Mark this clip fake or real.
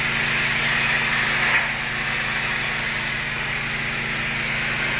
real